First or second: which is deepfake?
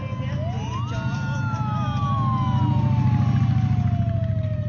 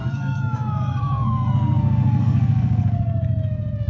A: second